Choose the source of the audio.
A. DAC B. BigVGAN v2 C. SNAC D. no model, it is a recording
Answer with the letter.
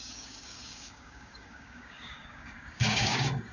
A